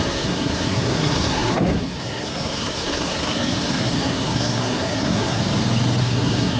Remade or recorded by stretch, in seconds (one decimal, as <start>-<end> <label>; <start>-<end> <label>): 0.0-5.4 remade; 5.4-6.0 recorded; 6.0-6.6 remade